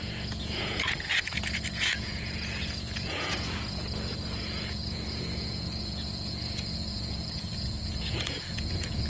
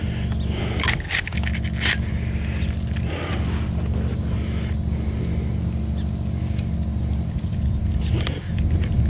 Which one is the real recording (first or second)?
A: second